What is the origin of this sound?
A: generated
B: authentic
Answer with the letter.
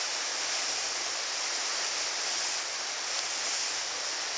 B